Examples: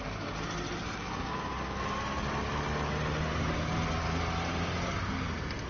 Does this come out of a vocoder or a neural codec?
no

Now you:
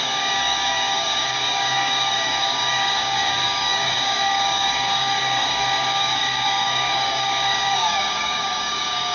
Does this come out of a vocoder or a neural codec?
yes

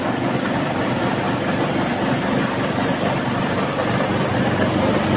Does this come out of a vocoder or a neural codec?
no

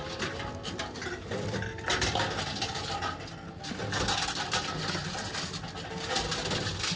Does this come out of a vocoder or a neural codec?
no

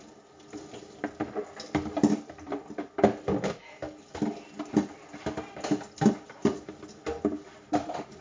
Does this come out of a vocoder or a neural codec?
no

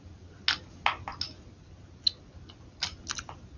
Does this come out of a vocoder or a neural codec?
no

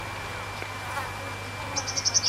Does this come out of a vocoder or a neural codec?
no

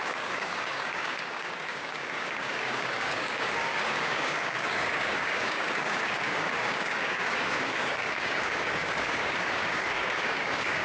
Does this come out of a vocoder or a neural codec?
yes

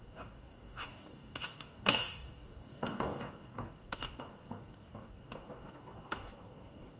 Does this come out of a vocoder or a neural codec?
yes